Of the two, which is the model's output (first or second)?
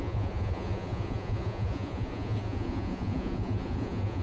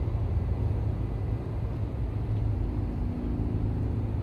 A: first